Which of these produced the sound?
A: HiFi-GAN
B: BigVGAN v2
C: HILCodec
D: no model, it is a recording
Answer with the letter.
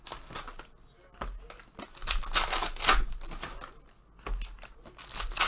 D